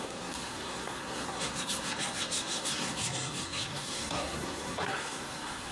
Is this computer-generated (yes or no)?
yes